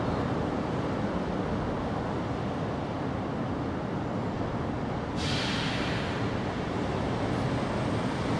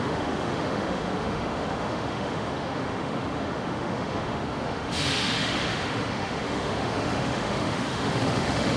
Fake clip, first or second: second